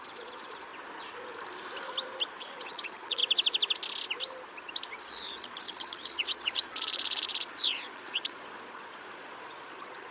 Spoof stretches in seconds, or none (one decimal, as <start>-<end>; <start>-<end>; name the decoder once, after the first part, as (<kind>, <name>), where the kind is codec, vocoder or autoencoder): 0.0-0.7 (vocoder, Vocos); 2.4-3.2; 5.0-10.1